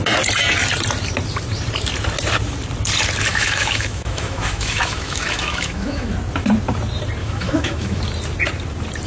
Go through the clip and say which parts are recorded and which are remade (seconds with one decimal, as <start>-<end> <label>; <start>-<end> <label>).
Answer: 0.0-3.3 recorded; 3.3-6.1 remade; 6.1-7.2 recorded; 7.2-8.0 remade; 8.0-9.1 recorded